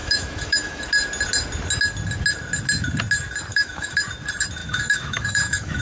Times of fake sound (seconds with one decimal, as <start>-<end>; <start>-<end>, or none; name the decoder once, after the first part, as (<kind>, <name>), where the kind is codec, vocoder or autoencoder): 0.0-0.8 (autoencoder, DAC-VAE); 3.5-4.0; 4.6-5.8